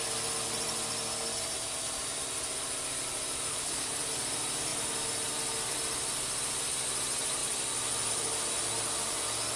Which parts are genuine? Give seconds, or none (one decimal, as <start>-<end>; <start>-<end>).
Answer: 0.0-3.5; 4.0-9.6

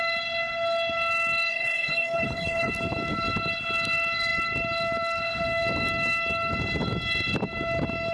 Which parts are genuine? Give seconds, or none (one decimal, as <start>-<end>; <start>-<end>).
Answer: 0.0-1.5; 2.7-8.1

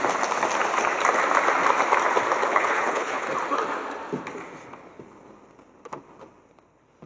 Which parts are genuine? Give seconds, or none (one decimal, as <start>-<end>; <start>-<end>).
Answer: 0.0-2.5; 3.3-7.1

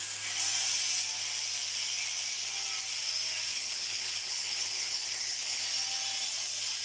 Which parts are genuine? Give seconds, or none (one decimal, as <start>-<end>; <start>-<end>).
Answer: 0.0-3.5; 5.6-6.8

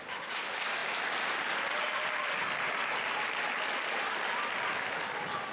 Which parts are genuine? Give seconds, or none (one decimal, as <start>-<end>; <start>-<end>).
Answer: 0.0-5.5

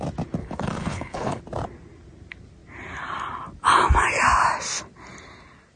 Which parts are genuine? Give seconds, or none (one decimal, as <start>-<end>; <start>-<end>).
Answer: 0.0-0.4; 1.4-5.8

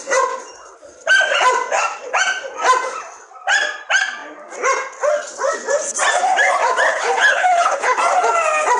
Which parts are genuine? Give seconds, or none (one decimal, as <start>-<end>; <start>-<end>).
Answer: 0.0-6.9; 8.0-8.8